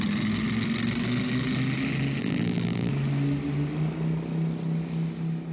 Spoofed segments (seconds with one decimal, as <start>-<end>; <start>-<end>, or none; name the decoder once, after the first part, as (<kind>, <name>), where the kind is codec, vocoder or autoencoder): 2.2-2.9 (vocoder, BigVGAN v2)